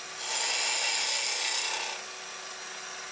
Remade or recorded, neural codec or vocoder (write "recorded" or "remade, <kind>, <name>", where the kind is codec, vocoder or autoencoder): recorded